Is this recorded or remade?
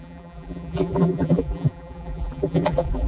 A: remade